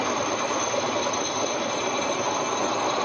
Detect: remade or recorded remade